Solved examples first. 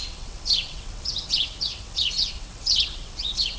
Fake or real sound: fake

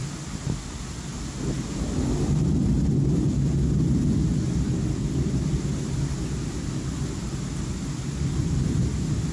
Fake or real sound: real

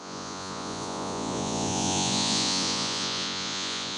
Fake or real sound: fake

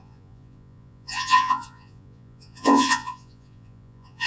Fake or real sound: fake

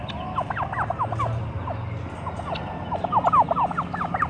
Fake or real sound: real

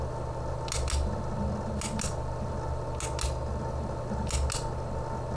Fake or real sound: real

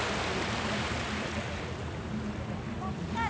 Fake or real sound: real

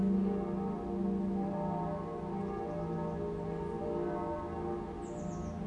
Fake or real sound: real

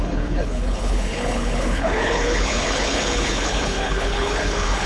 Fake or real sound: fake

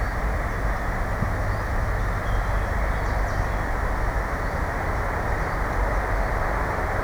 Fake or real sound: real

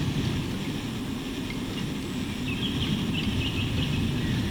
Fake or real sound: real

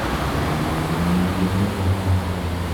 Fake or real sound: real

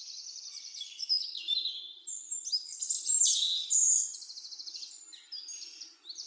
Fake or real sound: real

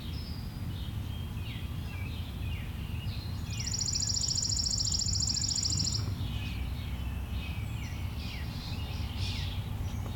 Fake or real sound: real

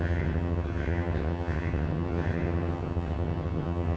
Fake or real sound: fake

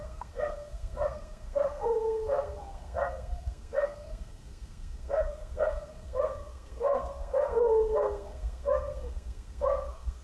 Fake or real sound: fake